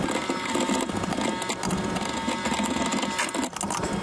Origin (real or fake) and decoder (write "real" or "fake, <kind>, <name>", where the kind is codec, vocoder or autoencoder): real